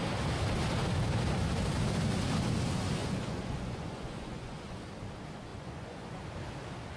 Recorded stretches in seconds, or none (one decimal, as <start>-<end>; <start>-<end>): 0.0-3.0; 4.9-5.5; 6.2-7.0